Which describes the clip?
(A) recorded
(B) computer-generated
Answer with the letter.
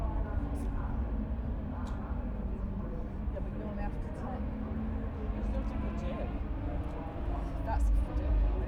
A